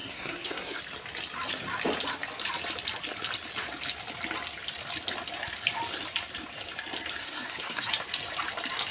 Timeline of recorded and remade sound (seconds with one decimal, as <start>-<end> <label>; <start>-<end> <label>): 0.0-0.8 remade; 0.8-7.2 recorded; 7.2-7.9 remade; 7.9-8.9 recorded